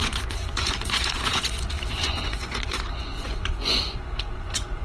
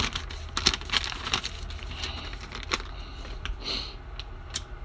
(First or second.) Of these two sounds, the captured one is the second